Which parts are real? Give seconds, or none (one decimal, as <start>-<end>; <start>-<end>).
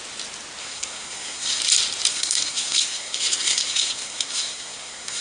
0.0-0.6; 1.6-2.1